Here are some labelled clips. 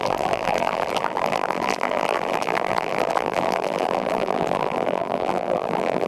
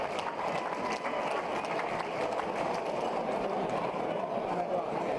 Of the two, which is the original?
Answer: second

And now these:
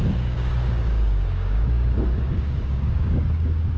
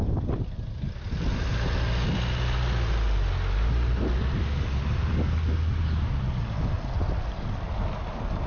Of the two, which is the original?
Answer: second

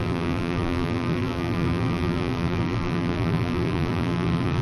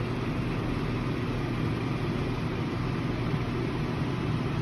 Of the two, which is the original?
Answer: second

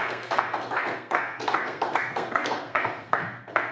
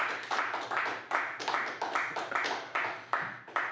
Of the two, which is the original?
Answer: second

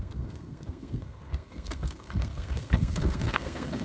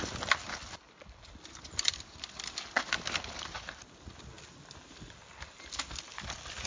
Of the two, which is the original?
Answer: second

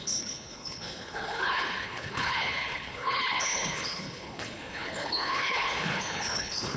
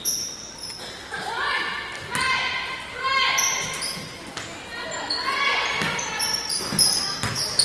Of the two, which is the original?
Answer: second